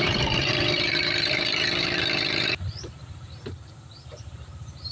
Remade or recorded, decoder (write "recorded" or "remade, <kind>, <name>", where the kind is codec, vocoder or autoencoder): remade, vocoder, BigVGAN v2